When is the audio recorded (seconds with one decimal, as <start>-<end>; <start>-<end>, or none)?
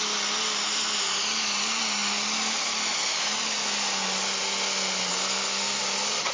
0.0-5.1; 5.8-6.3